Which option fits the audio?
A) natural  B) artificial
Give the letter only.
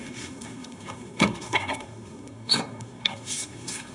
B